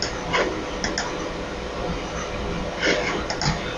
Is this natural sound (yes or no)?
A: yes